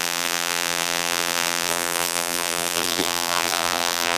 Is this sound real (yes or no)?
no